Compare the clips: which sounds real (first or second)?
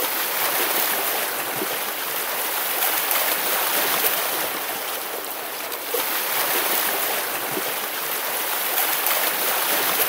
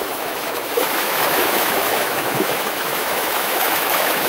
first